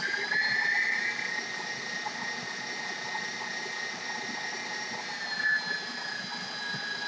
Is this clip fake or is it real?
real